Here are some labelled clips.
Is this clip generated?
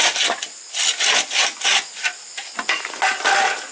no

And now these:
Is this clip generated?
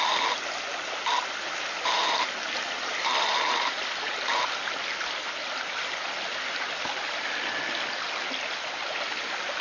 no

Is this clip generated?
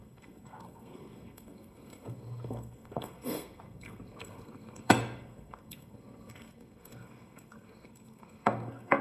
yes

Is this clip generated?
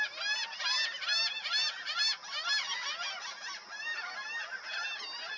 no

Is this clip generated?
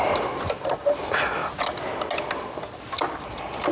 no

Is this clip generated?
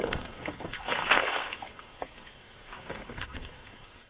yes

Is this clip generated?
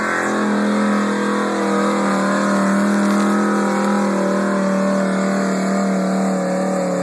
no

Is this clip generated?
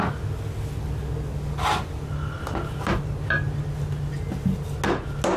no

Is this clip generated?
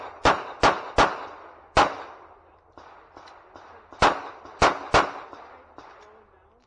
no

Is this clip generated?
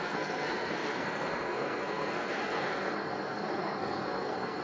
yes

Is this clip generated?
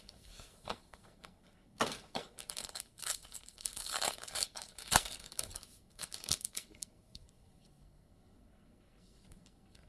yes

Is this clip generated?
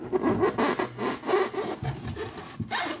no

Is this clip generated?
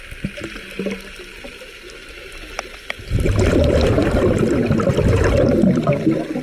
no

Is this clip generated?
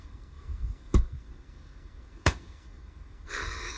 yes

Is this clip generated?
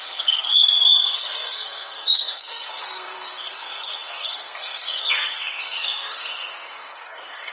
yes